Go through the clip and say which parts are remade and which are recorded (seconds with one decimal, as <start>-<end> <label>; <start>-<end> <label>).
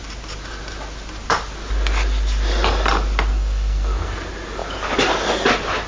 0.0-3.3 recorded; 3.3-4.1 remade; 4.1-5.9 recorded